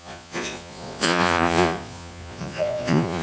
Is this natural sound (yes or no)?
no